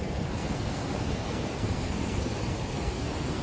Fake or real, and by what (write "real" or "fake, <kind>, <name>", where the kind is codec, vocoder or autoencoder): fake, codec, SNAC